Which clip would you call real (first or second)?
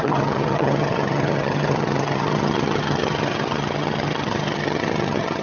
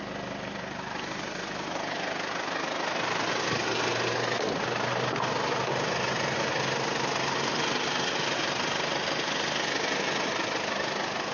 second